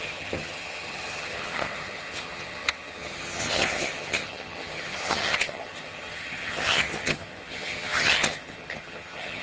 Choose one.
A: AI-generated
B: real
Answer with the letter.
A